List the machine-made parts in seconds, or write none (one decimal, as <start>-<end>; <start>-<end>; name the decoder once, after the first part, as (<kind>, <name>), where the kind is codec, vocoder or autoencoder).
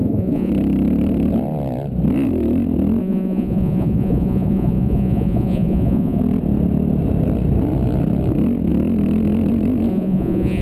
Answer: 0.0-0.5 (vocoder, Vocos); 3.0-6.2; 9.9-10.6